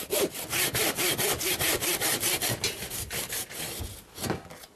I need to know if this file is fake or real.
real